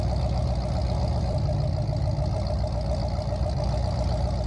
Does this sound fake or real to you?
real